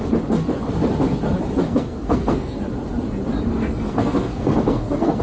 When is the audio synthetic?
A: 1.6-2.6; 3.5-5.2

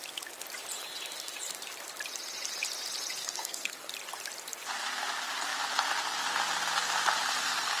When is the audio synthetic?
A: 3.2-3.9